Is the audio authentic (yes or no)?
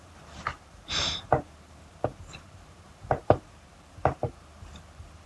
no